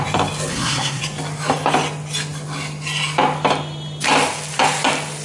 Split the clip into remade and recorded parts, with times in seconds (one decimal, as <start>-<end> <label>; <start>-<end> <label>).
0.0-0.5 recorded; 0.5-1.0 remade; 1.0-5.2 recorded

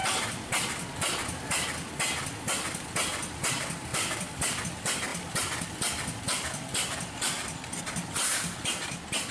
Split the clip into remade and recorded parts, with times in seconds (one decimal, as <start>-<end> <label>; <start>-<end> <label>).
0.0-0.5 remade; 0.5-3.9 recorded; 3.9-4.6 remade; 4.6-5.1 recorded; 5.1-7.8 remade; 7.8-9.3 recorded

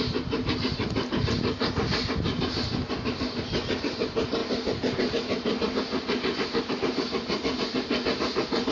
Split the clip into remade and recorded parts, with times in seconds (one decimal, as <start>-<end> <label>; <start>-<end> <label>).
0.0-8.7 recorded

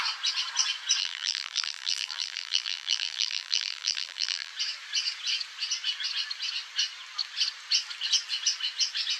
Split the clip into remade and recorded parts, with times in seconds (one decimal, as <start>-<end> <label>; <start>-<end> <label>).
0.0-1.0 recorded; 1.0-4.5 remade; 4.5-9.2 recorded

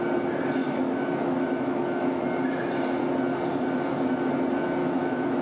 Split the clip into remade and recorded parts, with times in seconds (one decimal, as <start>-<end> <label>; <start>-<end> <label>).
0.0-0.6 recorded; 0.6-2.2 remade; 2.2-4.8 recorded; 4.8-5.4 remade

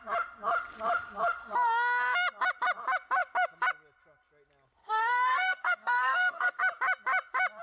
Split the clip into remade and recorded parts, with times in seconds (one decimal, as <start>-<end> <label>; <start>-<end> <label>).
0.0-4.8 recorded; 4.8-6.6 remade; 6.6-7.6 recorded